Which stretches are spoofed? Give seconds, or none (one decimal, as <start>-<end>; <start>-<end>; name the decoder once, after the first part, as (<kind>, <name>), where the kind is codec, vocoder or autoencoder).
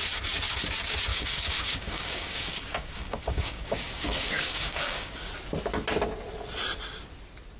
1.1-5.3 (codec, DAC)